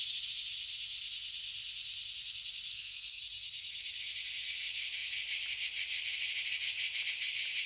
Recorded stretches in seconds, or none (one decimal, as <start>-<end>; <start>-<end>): 0.0-2.7; 3.2-7.7